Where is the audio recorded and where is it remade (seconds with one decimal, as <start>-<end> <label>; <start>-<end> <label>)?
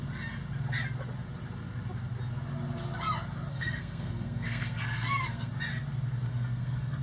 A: 0.0-3.5 recorded; 3.5-5.5 remade; 5.5-6.3 recorded; 6.3-7.0 remade